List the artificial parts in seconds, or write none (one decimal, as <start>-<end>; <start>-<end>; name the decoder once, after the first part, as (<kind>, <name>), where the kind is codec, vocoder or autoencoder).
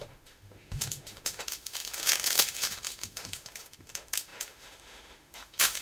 0.0-5.8 (autoencoder, DAC-VAE)